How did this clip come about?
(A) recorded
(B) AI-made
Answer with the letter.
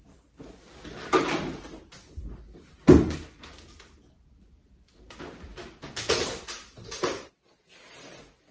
A